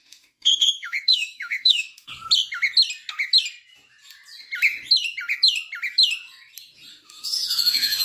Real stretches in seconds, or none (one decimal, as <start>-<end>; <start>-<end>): 2.1-6.9

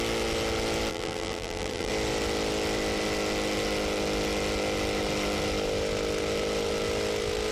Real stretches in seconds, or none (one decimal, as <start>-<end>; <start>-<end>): 0.0-0.9; 1.9-7.5

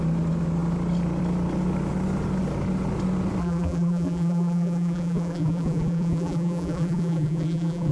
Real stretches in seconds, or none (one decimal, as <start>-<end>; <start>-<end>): 0.0-3.4

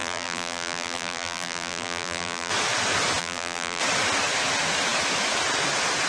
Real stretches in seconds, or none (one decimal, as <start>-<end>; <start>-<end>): 2.5-3.2; 3.8-6.1

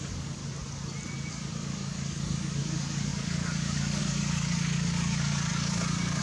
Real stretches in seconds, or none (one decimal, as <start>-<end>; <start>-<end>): 0.4-1.3

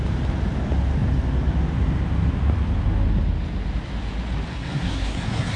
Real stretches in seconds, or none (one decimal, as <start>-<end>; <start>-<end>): 0.0-4.5

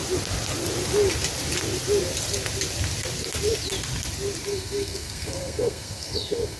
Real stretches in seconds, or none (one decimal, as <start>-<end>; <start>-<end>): 0.0-4.5

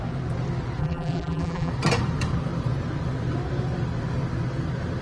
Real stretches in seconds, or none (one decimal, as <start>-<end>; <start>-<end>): 0.0-0.8; 1.7-5.0